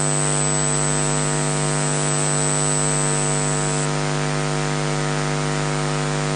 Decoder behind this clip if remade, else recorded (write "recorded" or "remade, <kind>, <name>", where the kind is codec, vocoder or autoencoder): recorded